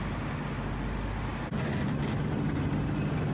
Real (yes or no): yes